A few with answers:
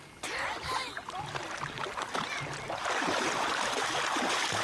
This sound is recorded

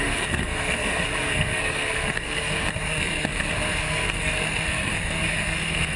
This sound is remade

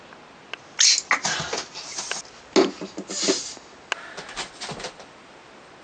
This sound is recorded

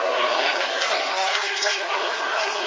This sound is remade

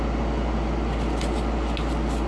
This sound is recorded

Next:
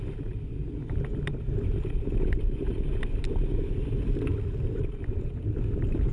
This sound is recorded